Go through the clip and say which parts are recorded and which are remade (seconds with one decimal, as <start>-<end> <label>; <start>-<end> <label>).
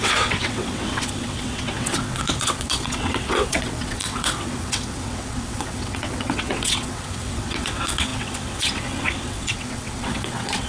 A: 0.0-10.7 remade